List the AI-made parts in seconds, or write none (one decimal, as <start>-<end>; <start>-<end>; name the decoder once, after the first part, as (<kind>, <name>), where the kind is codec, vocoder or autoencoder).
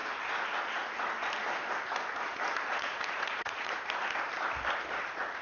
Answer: 2.7-3.7 (vocoder, Vocos)